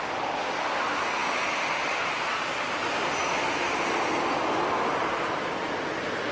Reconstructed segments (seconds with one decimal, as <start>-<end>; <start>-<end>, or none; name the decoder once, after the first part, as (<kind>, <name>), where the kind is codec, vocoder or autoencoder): none